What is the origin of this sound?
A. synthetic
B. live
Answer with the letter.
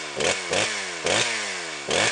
B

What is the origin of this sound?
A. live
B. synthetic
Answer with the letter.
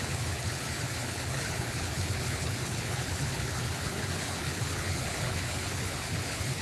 B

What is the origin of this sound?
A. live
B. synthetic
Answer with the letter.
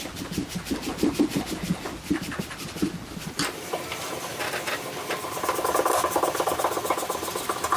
A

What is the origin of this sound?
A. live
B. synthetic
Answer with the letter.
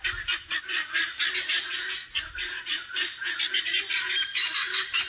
A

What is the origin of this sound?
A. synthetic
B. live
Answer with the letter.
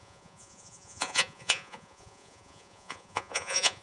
A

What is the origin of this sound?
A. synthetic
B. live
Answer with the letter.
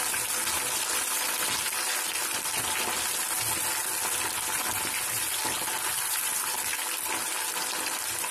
B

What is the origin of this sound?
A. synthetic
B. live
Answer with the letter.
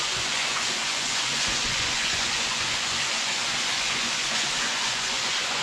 A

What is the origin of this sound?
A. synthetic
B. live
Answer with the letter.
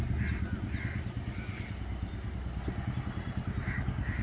B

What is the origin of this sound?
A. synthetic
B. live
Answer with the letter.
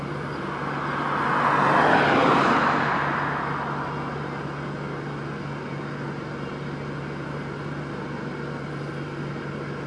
B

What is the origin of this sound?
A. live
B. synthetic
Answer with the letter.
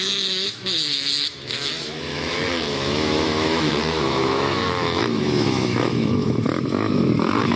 B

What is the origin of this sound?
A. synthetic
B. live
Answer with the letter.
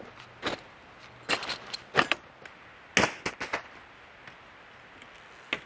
B